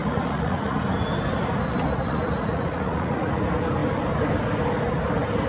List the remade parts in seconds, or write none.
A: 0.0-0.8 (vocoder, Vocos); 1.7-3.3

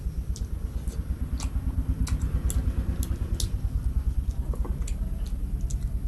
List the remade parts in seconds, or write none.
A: none

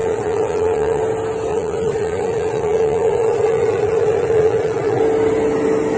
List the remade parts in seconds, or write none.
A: 0.0-1.0 (vocoder, Vocos); 1.5-5.0

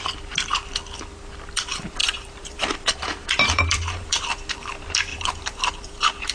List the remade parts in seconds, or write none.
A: 2.0-4.3 (vocoder, BigVGAN v2); 5.1-6.3

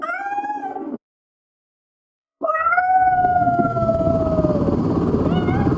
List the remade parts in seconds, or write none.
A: 0.6-4.1 (codec, SNAC)

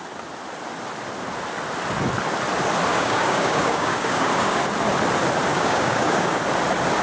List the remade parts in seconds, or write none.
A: 2.9-4.6 (codec, DAC); 5.5-6.4

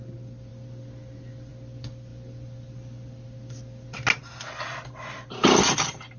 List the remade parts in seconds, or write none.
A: none

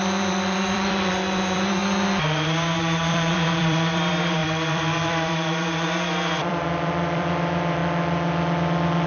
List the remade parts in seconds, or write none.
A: 0.0-1.8 (vocoder, BigVGAN v2); 3.1-7.8